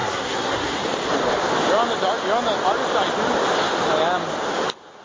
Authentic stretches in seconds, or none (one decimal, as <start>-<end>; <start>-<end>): 0.8-5.0